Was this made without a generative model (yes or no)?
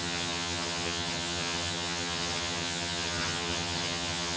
no